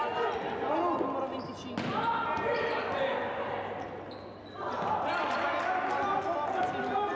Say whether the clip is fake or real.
real